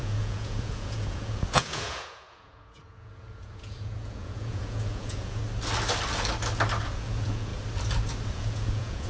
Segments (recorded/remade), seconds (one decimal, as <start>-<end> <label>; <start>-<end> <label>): 0.0-5.4 remade; 5.4-6.8 recorded; 6.8-7.5 remade; 7.5-8.3 recorded; 8.3-9.1 remade